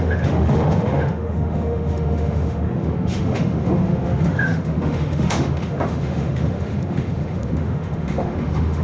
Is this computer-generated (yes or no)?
yes